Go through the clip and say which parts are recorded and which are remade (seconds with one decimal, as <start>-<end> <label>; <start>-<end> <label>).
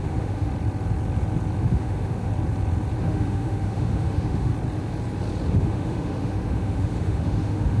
0.0-0.5 remade; 0.5-1.6 recorded; 1.6-2.3 remade; 2.3-3.0 recorded; 3.0-4.5 remade; 4.5-5.5 recorded; 5.5-7.8 remade